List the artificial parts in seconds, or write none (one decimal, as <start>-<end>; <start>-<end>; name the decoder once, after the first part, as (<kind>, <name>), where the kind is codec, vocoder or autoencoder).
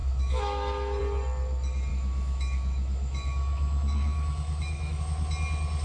0.0-1.0 (autoencoder, DAC-VAE); 1.9-5.0